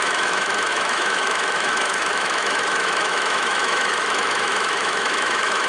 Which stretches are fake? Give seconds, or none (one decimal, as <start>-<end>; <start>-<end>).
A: 0.0-5.7